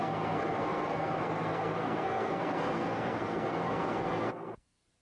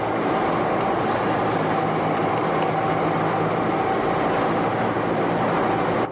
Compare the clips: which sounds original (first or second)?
second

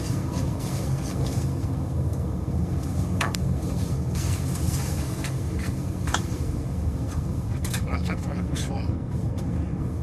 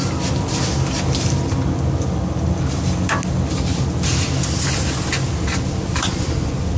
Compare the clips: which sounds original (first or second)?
second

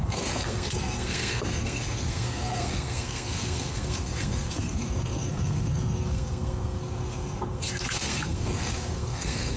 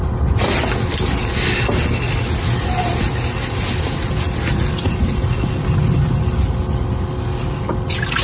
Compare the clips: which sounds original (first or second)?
second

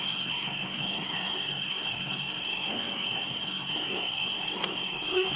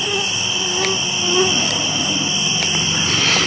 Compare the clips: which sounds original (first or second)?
second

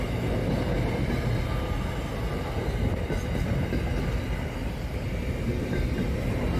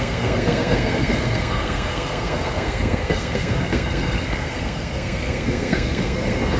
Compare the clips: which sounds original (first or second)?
first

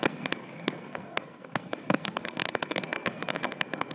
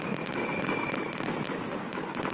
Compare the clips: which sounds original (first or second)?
second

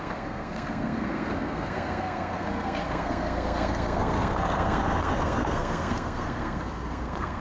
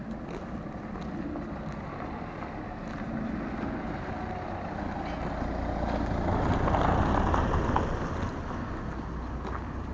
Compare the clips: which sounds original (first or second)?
second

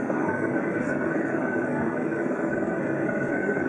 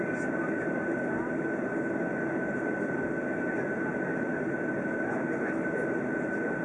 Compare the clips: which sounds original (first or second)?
second